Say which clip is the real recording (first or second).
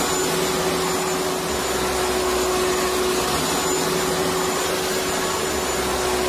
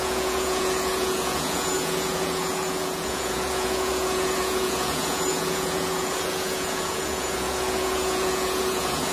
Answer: first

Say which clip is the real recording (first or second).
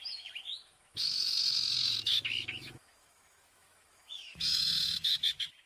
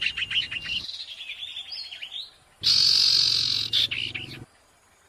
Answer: second